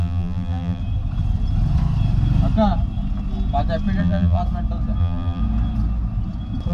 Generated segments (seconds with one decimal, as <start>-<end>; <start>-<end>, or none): 0.0-0.8; 4.0-4.4; 5.0-5.4